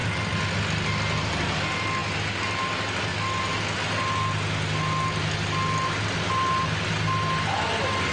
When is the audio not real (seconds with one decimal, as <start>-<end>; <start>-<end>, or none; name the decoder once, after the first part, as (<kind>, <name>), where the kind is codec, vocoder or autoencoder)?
none